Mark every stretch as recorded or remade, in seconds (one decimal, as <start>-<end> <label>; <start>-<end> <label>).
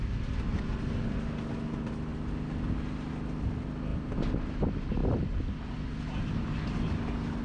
0.0-7.4 recorded